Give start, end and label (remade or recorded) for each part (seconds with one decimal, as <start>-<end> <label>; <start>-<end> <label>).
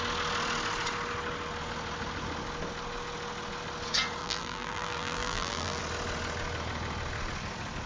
0.0-4.2 recorded; 4.2-5.8 remade; 5.8-7.9 recorded